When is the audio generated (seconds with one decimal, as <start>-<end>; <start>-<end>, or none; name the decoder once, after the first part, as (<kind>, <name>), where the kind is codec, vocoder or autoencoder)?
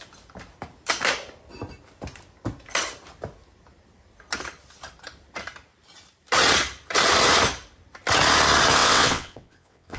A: 8.8-10.0 (vocoder, WaveNeXt)